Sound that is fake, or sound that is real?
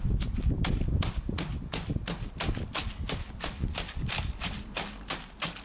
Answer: real